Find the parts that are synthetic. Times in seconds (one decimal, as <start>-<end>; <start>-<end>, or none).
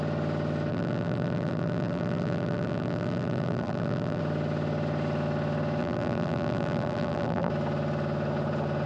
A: 0.7-4.2; 5.8-7.5